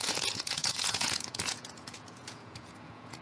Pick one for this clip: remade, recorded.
remade